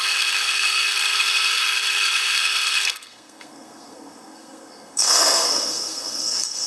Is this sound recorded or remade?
remade